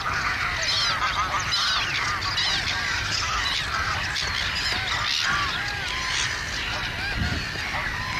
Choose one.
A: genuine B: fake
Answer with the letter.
A